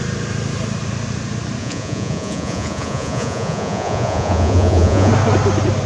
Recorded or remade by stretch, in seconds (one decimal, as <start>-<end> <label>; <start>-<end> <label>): 0.0-1.6 recorded; 1.6-5.1 remade; 5.1-5.9 recorded